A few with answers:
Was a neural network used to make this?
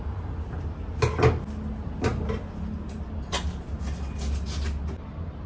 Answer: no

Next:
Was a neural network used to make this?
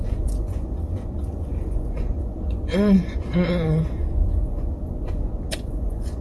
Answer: yes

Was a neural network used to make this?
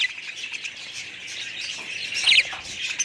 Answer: no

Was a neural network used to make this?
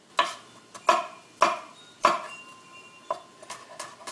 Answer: no